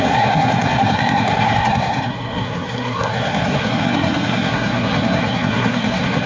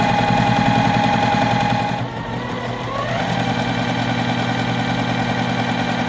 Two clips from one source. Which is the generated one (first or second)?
first